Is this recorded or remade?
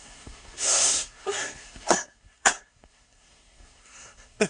remade